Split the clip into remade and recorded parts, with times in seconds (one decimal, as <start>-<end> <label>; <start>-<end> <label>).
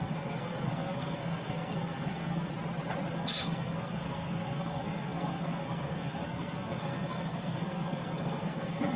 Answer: 0.0-2.5 remade; 2.5-3.1 recorded; 3.1-9.0 remade